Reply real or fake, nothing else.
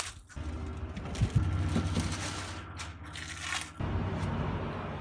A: real